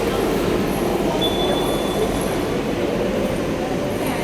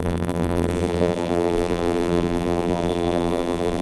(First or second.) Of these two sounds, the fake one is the second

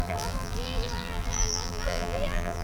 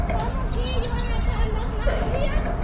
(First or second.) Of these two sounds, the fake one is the first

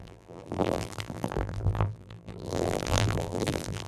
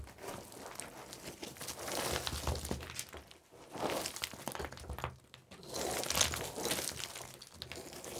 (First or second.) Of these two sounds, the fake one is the first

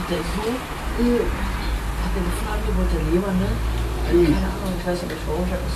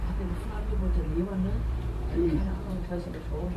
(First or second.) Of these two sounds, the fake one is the second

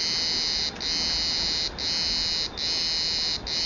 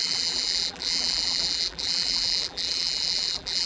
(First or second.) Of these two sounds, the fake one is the second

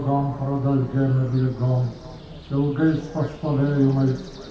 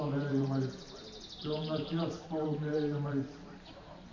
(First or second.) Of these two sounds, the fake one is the second